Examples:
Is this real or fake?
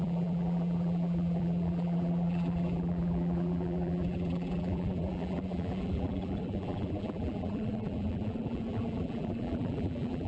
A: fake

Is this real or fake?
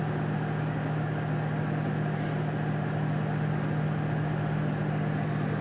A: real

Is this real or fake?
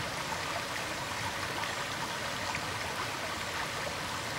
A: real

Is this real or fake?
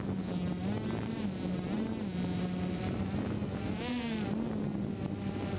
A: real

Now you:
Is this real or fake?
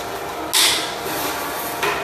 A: real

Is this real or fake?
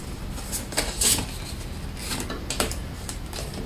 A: real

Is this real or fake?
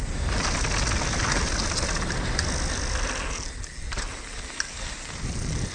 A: real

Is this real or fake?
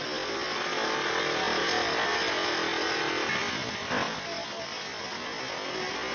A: real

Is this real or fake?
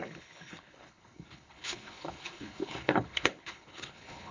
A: fake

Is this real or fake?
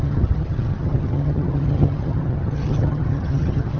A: fake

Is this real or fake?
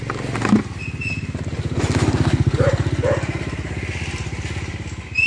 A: real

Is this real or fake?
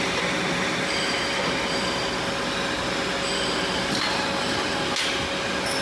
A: real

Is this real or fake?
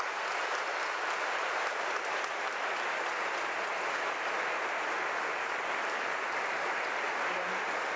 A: real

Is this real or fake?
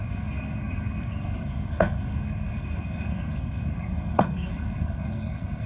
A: fake